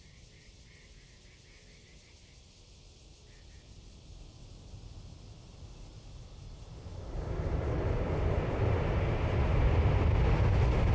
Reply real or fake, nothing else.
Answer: real